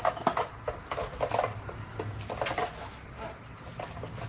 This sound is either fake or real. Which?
real